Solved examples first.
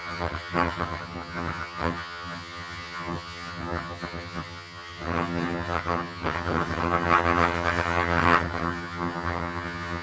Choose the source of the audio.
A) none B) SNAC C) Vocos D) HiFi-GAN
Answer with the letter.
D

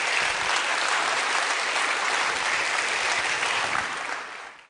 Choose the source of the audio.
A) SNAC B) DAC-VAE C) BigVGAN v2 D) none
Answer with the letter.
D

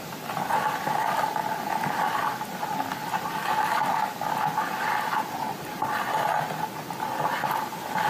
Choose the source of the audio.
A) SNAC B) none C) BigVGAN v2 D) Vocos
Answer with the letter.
B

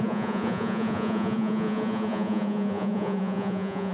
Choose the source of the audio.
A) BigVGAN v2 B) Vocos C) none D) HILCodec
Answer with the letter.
B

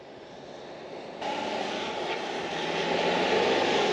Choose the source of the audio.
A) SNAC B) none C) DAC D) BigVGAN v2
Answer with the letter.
B